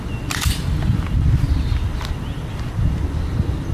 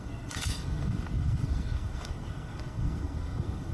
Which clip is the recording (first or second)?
first